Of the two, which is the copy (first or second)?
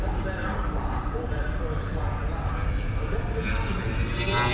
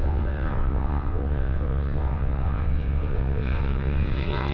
second